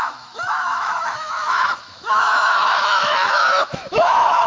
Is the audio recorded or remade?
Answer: remade